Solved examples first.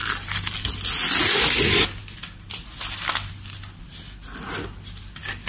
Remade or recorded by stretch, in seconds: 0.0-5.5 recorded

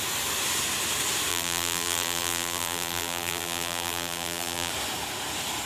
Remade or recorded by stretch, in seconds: 0.0-1.3 recorded; 1.3-4.7 remade; 4.7-5.7 recorded

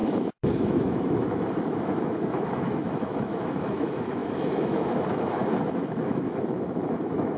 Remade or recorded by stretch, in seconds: 0.0-7.4 remade

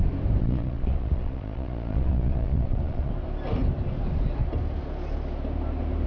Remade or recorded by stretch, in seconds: 0.0-0.4 recorded; 0.4-3.1 remade; 3.1-6.1 recorded

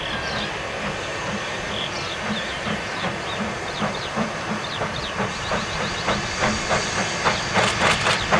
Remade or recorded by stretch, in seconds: 0.0-1.1 recorded; 1.1-5.9 remade; 5.9-8.4 recorded

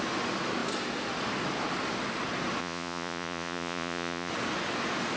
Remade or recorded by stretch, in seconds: 0.0-2.6 recorded; 2.6-4.3 remade; 4.3-5.2 recorded

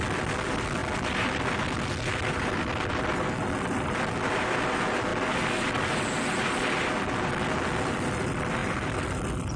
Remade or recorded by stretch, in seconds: 0.0-9.6 recorded

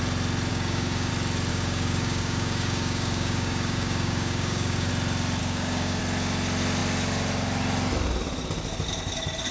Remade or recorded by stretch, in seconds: 0.0-0.5 recorded; 0.5-1.1 remade; 1.1-1.5 recorded; 1.5-4.9 remade; 4.9-5.4 recorded; 5.4-6.0 remade; 6.0-9.5 recorded